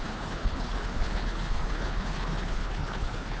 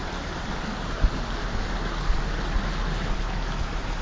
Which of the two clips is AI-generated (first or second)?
first